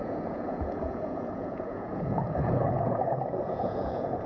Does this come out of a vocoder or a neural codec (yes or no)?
yes